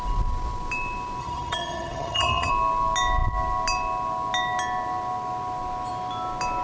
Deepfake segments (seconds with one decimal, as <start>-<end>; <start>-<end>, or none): 1.2-2.5